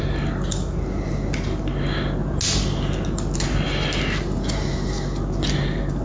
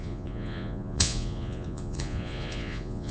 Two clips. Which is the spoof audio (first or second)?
second